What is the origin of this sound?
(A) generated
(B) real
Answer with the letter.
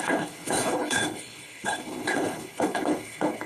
A